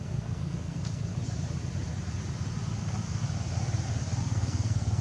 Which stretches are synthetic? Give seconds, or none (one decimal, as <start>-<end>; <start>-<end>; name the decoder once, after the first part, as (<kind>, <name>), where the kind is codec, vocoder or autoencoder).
0.0-1.1 (codec, SNAC); 2.8-3.2; 4.2-5.0